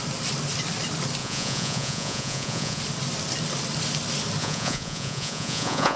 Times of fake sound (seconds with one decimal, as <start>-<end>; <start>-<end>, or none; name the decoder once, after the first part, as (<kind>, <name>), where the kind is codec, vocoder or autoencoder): 1.2-2.8 (vocoder, Vocos); 4.4-6.0